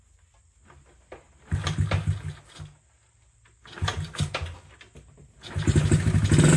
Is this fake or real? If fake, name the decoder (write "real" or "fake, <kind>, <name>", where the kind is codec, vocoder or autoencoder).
real